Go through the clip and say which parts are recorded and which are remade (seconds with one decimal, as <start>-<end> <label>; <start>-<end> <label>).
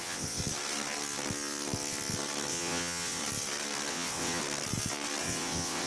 0.0-0.4 remade; 0.4-2.5 recorded; 2.5-3.2 remade; 3.2-3.9 recorded; 3.9-4.4 remade; 4.4-5.2 recorded; 5.2-5.9 remade